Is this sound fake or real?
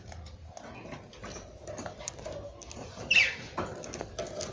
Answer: real